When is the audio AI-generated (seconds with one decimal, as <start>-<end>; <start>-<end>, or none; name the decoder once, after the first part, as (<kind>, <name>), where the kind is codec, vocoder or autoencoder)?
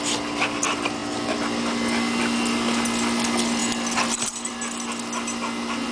none